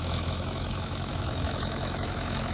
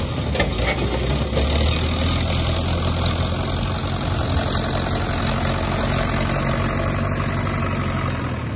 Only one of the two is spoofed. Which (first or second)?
first